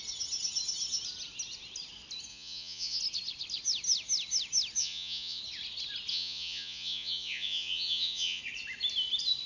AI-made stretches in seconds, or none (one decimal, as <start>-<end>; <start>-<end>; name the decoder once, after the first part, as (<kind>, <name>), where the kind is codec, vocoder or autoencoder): 2.3-3.0 (vocoder, Vocos); 4.8-5.4; 6.1-8.4